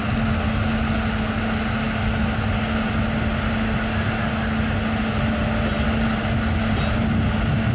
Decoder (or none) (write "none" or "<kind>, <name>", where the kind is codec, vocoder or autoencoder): none